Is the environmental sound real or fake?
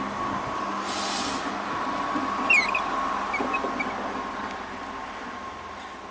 real